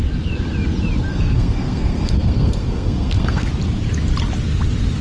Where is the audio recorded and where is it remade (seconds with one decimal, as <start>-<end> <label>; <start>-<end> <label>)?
0.0-1.1 recorded; 1.1-3.5 remade; 3.5-5.0 recorded